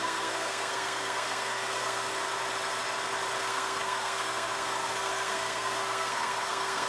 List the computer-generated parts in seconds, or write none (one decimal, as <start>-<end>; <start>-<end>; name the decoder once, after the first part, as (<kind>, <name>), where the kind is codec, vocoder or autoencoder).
0.0-2.1 (codec, SNAC); 3.4-6.9